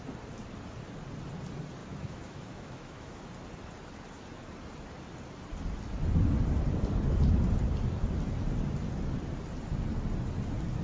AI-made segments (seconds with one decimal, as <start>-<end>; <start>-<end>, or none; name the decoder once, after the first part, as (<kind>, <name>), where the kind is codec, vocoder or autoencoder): 1.8-3.3 (autoencoder, DAC-VAE)